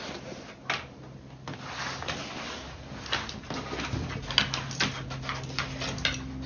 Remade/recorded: recorded